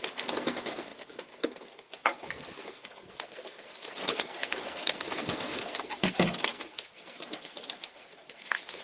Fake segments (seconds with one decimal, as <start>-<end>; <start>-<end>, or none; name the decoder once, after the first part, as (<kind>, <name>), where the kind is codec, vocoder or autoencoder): 0.0-8.8 (codec, SNAC)